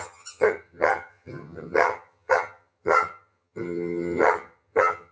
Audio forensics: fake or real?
fake